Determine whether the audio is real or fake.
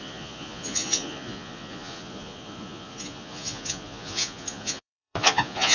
fake